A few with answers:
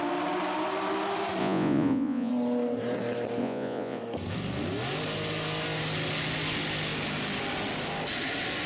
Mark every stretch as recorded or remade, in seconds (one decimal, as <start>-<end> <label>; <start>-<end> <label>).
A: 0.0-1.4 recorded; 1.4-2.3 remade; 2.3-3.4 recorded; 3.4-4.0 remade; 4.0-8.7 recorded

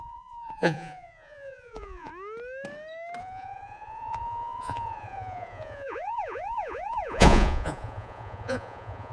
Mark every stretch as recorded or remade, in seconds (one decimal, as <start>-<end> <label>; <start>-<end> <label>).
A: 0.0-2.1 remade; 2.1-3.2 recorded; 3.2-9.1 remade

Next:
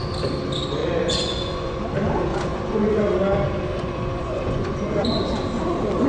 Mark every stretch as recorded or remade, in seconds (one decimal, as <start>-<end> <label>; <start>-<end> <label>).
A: 0.0-0.8 recorded; 0.8-1.8 remade; 1.8-2.3 recorded; 2.3-3.0 remade; 3.0-3.7 recorded; 3.7-5.1 remade; 5.1-6.1 recorded